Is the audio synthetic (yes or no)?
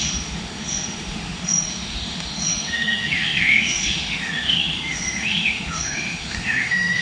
yes